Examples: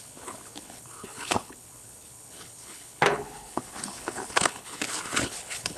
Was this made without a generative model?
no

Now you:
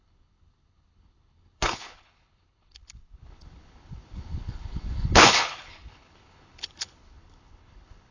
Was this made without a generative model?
no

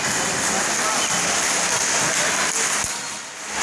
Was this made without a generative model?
yes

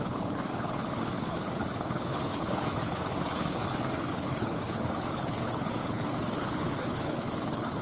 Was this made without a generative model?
no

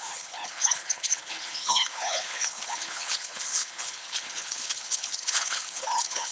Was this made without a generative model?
no